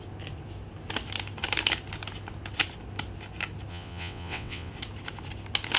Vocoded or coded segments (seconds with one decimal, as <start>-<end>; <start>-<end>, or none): 3.7-4.7